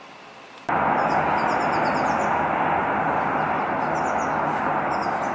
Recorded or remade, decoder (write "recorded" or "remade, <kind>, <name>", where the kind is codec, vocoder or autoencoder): recorded